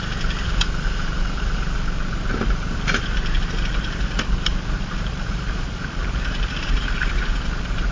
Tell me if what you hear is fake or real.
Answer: fake